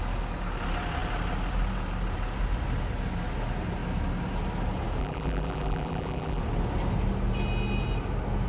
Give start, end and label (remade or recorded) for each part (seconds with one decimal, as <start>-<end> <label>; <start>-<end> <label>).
0.0-5.0 recorded; 5.0-6.4 remade; 6.4-8.5 recorded